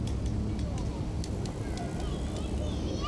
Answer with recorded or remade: recorded